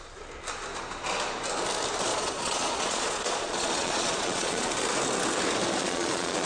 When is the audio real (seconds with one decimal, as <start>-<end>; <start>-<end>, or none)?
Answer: 0.0-2.1; 4.7-5.8